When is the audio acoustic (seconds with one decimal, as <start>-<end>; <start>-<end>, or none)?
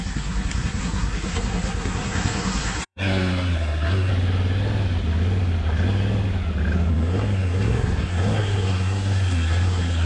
4.1-6.9